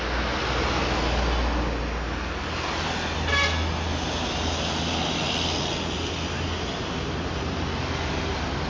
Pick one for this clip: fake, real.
real